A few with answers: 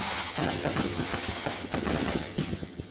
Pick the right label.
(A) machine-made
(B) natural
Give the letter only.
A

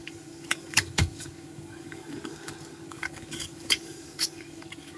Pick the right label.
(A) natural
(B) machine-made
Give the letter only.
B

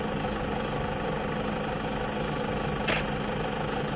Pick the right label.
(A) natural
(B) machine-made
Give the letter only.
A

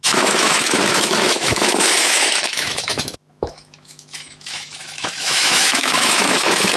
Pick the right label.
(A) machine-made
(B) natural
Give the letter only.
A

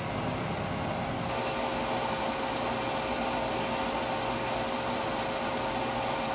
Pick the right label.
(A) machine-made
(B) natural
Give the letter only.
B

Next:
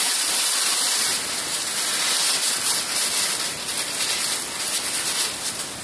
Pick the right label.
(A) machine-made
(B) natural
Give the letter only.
B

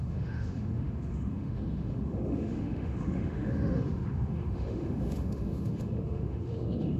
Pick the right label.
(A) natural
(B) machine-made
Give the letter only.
B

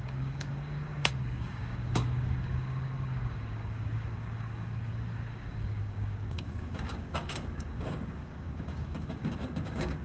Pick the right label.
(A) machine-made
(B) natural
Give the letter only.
A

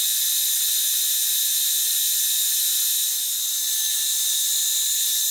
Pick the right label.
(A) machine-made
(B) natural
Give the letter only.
B